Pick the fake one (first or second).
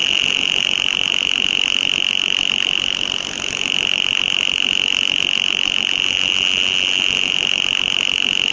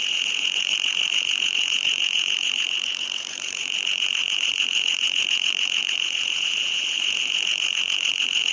second